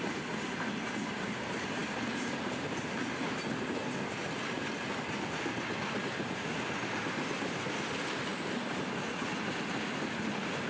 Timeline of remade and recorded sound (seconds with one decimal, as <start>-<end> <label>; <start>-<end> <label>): 0.0-10.7 recorded